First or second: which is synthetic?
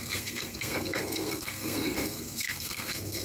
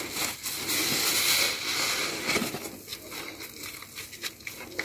first